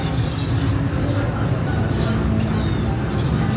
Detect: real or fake real